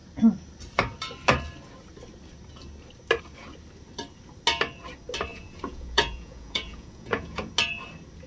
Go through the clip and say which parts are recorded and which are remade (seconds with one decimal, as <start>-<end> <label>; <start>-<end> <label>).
0.0-5.3 recorded; 5.3-7.5 remade; 7.5-8.3 recorded